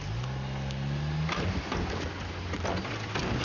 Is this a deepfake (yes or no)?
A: no